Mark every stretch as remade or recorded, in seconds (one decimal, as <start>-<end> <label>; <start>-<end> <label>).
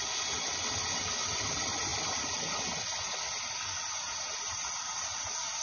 0.0-5.6 recorded